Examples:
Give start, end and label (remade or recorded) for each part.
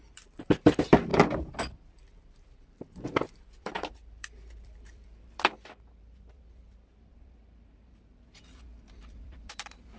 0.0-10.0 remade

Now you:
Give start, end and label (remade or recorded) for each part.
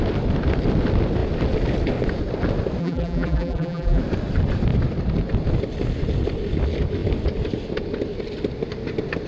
0.0-2.8 recorded; 2.8-4.0 remade; 4.0-9.3 recorded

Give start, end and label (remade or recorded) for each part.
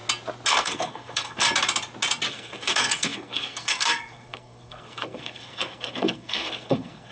0.0-0.5 recorded; 0.5-1.4 remade; 1.4-2.3 recorded; 2.3-7.1 remade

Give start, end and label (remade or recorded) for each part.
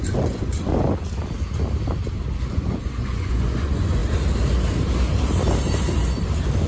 0.0-0.7 remade; 0.7-2.4 recorded; 2.4-4.0 remade; 4.0-6.7 recorded